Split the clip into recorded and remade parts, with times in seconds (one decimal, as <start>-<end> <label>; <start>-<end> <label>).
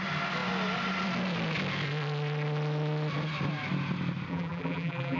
0.0-4.3 recorded; 4.3-5.2 remade